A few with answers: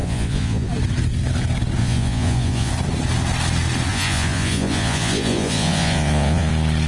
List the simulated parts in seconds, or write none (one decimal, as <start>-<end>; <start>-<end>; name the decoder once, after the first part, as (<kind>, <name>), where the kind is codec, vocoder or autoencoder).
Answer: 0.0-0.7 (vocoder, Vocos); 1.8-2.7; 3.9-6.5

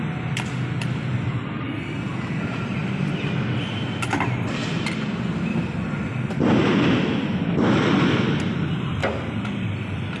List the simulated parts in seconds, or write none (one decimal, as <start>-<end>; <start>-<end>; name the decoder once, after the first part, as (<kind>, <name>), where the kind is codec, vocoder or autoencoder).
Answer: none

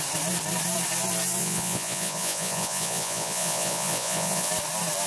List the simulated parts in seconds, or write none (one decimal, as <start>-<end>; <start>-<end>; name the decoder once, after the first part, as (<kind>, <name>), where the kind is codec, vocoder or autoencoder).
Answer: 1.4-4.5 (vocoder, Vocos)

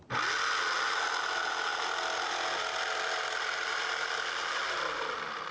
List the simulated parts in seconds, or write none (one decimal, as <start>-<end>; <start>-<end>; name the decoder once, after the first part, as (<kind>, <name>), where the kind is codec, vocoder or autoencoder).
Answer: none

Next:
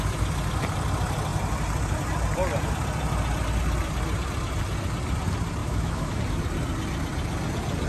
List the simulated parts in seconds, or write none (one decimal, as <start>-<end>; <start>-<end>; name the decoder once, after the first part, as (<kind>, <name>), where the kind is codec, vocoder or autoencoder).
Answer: 5.6-6.2 (autoencoder, DAC-VAE)